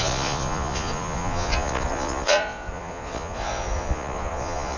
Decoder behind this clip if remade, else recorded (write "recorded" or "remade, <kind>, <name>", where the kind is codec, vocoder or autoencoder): remade, vocoder, Vocos